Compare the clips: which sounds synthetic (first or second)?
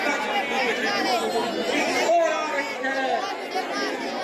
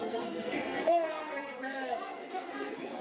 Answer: second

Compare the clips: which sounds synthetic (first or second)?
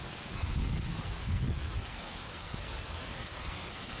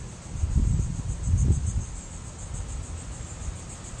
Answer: first